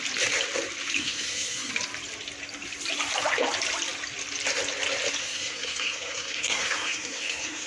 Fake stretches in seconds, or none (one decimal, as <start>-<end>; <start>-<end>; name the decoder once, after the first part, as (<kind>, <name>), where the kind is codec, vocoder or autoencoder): 1.0-1.7 (codec, SNAC); 5.2-7.7